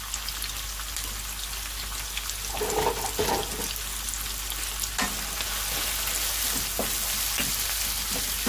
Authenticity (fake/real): real